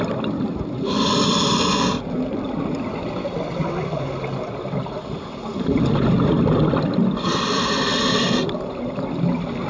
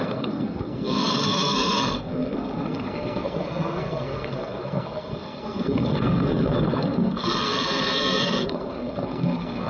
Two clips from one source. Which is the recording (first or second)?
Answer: first